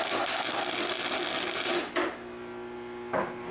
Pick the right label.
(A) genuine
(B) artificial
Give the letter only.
A